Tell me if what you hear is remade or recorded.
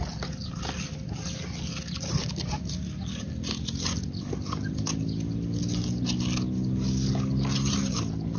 recorded